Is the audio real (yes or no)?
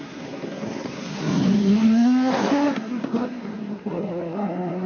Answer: no